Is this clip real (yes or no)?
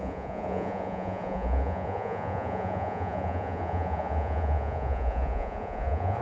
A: no